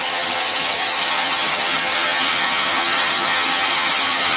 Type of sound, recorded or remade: remade